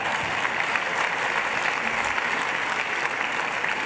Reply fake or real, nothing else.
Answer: real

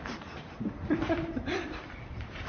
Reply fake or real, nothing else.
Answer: fake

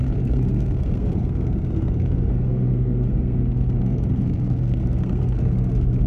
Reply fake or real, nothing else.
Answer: fake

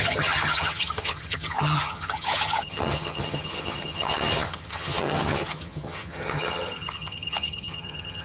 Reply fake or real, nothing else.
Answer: fake